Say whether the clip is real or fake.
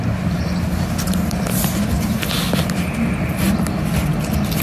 real